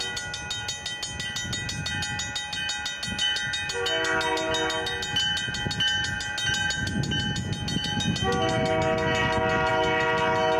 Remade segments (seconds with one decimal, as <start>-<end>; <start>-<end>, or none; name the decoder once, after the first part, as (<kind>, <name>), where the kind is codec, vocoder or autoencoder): none